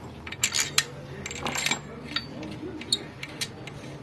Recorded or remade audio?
recorded